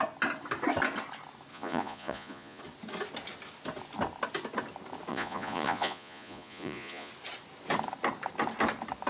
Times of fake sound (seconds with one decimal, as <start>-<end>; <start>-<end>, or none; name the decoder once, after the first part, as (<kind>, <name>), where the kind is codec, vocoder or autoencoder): 1.5-2.6 (vocoder, Vocos); 5.1-7.1